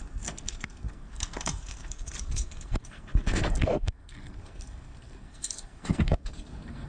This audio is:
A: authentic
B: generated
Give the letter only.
B